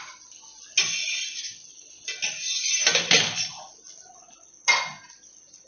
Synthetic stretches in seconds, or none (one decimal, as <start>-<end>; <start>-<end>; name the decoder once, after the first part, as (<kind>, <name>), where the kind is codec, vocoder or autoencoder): none